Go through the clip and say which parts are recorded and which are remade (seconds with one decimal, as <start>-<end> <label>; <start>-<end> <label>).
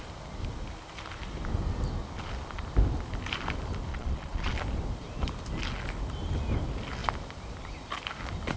0.0-3.9 recorded; 3.9-4.5 remade; 4.5-8.6 recorded